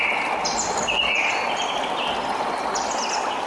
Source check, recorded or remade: recorded